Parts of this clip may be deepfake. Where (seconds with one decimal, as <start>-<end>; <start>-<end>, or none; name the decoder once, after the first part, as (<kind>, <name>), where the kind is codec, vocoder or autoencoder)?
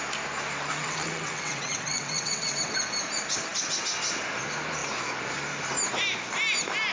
0.7-2.6 (vocoder, WaveNeXt)